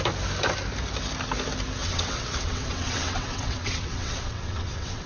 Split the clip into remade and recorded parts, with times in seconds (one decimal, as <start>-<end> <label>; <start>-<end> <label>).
0.0-1.8 recorded; 1.8-5.1 remade